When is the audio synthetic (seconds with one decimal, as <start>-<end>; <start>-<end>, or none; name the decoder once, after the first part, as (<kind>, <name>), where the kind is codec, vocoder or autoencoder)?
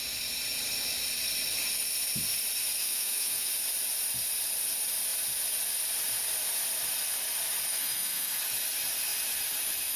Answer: 2.8-3.5 (autoencoder, DAC-VAE); 7.7-8.4